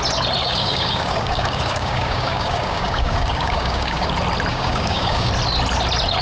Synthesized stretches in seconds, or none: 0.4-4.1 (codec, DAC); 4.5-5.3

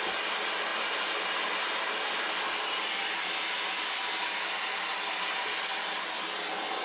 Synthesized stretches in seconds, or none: none

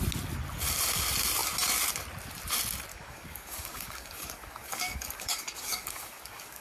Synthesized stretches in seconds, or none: 2.9-6.6 (codec, DAC)

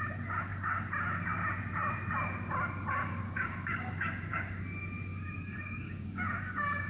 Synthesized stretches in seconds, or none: 3.0-4.6 (codec, DAC); 5.1-6.9

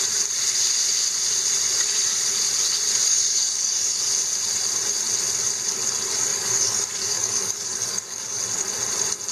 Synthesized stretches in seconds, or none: 3.0-4.0 (codec, DAC); 6.3-8.4

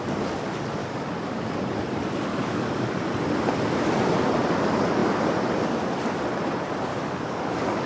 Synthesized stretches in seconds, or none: 0.8-1.5 (codec, DAC); 2.3-3.0; 6.9-7.9